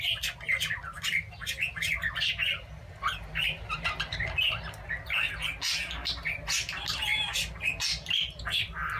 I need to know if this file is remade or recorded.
recorded